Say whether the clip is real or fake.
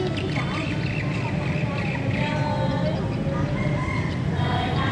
real